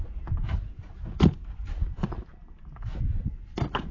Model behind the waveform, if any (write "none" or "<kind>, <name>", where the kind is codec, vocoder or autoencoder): none